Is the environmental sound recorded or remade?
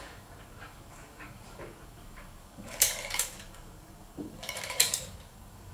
remade